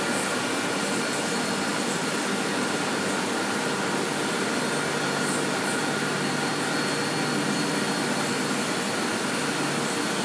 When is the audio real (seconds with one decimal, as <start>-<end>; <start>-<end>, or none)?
0.0-10.2

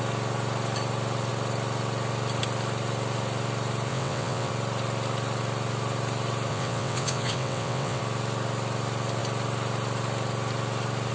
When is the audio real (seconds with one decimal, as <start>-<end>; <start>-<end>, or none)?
0.0-3.9; 4.5-6.5; 8.0-11.1

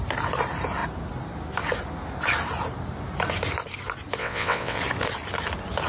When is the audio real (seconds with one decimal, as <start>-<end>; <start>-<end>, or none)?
0.0-4.2; 4.8-5.9

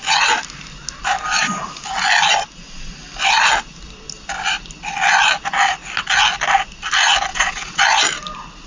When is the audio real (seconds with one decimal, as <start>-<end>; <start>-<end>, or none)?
0.0-7.3; 7.8-8.7